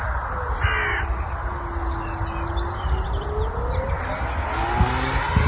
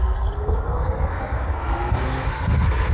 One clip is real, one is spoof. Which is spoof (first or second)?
second